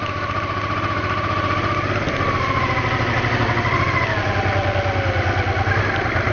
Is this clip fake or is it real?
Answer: real